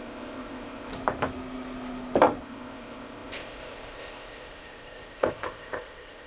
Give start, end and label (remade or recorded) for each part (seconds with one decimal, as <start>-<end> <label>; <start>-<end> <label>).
0.0-0.9 remade; 0.9-2.4 recorded; 2.4-6.3 remade